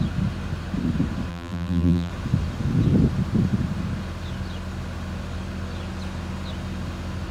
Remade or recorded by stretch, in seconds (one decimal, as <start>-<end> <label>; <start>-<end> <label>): 0.0-1.3 recorded; 1.3-2.1 remade; 2.1-7.3 recorded